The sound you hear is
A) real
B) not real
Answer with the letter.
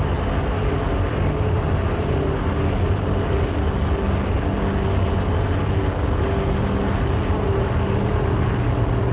A